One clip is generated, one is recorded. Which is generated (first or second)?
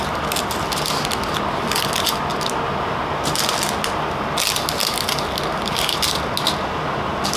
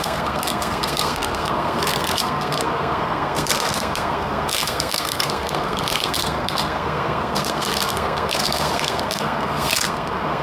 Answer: second